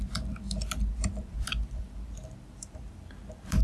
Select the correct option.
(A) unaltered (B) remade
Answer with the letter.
B